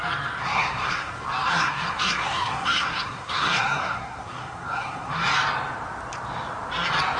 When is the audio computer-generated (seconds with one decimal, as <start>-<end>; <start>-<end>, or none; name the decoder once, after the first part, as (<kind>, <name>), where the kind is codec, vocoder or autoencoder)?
0.4-1.1 (codec, SNAC); 1.5-5.2